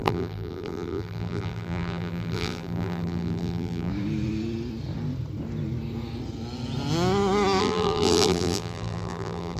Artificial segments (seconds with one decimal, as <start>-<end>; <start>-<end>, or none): 0.0-3.9; 7.6-9.6

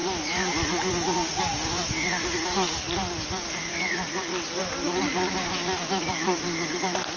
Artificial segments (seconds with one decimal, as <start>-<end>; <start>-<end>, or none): 0.0-4.3; 4.9-7.2

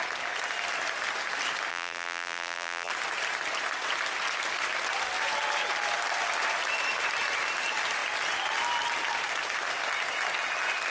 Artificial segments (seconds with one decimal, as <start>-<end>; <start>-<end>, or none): 1.7-2.9

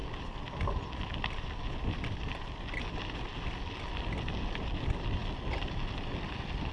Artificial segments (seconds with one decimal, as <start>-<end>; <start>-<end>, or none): none

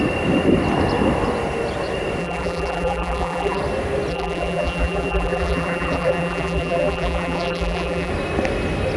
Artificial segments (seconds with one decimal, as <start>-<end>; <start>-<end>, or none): 2.2-3.6; 4.1-8.1

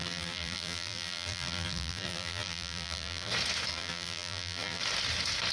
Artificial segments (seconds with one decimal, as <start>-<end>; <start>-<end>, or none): 0.0-3.3; 3.7-4.8

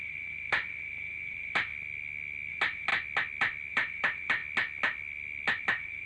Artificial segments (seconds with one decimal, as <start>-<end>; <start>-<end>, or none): 0.0-1.7; 2.5-2.9; 3.7-4.4; 5.6-6.1